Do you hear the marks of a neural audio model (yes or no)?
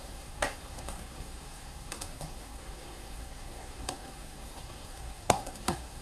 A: yes